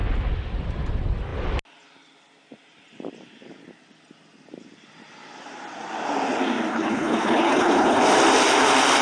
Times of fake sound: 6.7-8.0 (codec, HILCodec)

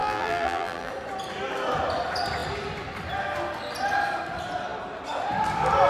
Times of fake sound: 0.0-0.9 (vocoder, BigVGAN v2)

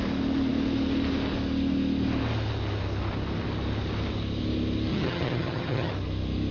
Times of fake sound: 4.9-5.9 (vocoder, HiFi-GAN)

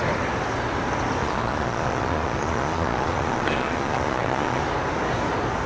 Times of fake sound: 1.2-4.6 (vocoder, Vocos)

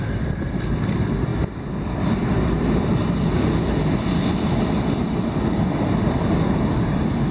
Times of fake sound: none

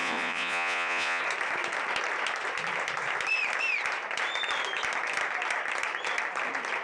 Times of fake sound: 0.0-1.2 (vocoder, Vocos)